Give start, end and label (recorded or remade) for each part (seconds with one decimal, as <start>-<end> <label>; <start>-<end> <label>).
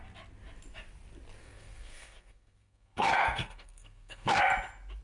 0.0-1.4 recorded; 1.4-4.4 remade; 4.4-5.0 recorded